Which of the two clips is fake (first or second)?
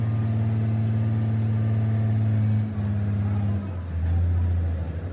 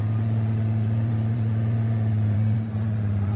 second